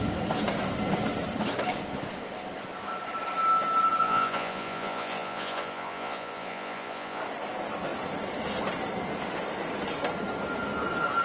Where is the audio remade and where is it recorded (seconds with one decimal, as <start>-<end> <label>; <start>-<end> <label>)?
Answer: 0.0-4.0 recorded; 4.0-7.2 remade; 7.2-11.2 recorded